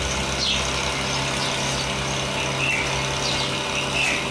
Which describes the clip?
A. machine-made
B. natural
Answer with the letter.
B